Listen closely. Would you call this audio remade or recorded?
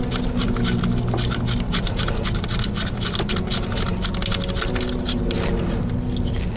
recorded